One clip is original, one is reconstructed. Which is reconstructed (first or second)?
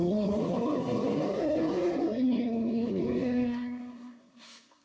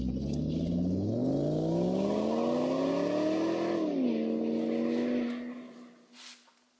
first